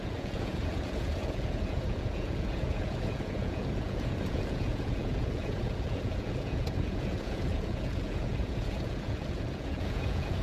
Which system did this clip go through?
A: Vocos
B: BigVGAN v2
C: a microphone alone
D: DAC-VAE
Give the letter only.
A